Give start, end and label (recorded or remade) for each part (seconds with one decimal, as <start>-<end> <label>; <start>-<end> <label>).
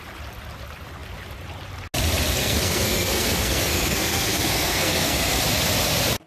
0.0-2.4 recorded; 2.4-5.4 remade; 5.4-6.3 recorded